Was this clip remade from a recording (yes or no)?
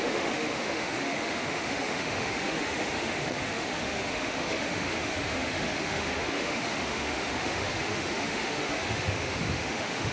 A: yes